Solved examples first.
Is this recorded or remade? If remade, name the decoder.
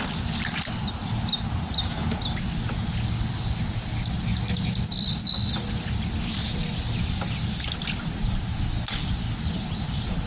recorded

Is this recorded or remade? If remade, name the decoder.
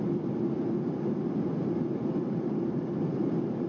recorded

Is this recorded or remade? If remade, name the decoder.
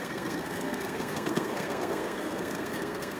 remade, codec, SNAC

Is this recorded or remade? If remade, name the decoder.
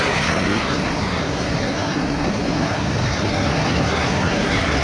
remade, codec, SNAC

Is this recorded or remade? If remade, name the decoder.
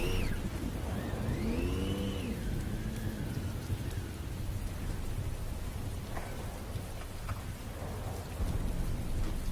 recorded